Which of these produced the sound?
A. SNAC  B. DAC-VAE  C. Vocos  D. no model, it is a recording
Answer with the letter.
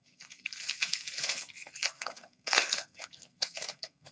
A